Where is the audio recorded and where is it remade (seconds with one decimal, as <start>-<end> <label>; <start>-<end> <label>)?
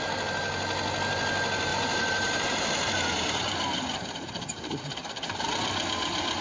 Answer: 0.0-1.7 recorded; 1.7-5.5 remade; 5.5-6.4 recorded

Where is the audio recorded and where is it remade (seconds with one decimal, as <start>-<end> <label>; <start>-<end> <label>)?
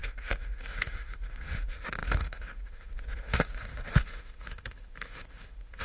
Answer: 0.0-5.8 remade